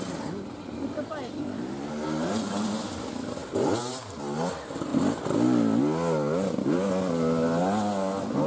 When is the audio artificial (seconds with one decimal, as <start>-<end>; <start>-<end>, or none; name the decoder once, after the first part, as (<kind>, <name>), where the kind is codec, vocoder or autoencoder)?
3.4-4.2 (vocoder, BigVGAN v2)